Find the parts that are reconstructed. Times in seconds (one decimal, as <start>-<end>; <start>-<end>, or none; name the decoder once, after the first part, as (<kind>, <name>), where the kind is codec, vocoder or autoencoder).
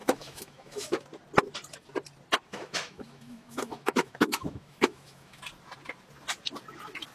0.0-1.0 (autoencoder, DAC-VAE); 2.5-5.4